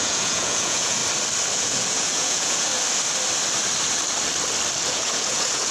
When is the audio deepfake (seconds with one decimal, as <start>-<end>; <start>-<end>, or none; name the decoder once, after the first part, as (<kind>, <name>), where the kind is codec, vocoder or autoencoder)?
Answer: 0.0-1.0 (vocoder, Vocos); 1.6-2.7; 4.8-5.7